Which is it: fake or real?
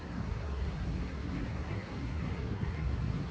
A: fake